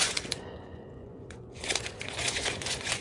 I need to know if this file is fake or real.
fake